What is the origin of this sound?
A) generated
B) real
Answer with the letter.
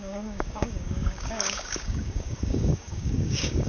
A